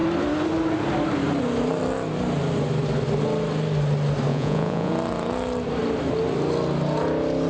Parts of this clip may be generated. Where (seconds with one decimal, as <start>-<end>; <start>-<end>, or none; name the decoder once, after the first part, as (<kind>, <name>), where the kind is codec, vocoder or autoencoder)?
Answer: 4.3-4.9 (vocoder, Vocos)